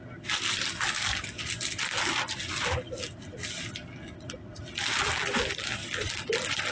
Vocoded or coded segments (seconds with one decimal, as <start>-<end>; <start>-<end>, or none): none